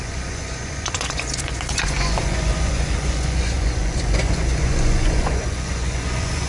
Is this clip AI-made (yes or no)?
yes